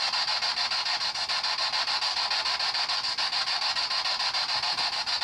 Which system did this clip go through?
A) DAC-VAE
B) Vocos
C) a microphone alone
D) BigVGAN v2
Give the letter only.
C